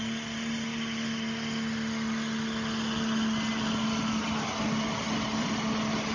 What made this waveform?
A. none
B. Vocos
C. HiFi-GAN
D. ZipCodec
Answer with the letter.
A